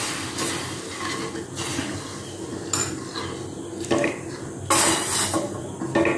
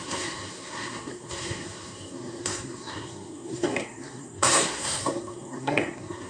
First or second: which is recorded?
first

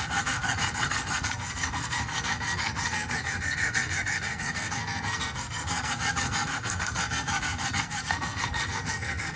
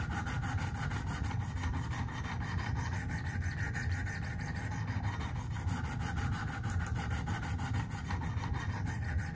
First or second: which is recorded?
second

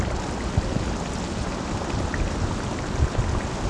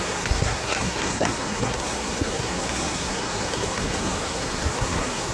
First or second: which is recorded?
first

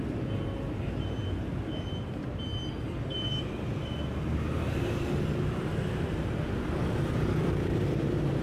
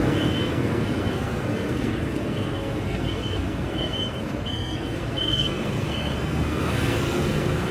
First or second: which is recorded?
first